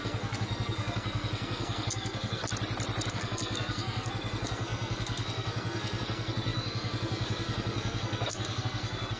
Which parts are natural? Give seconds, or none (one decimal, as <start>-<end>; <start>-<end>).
2.4-3.1